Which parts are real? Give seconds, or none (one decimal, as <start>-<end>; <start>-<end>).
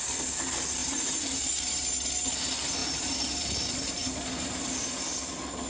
0.0-0.8; 1.5-2.8; 5.0-5.7